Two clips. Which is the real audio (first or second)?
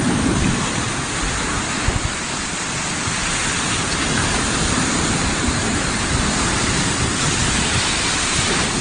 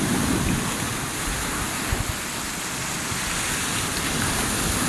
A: second